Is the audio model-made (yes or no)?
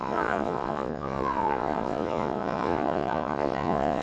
yes